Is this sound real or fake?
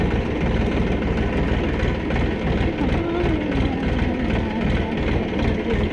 real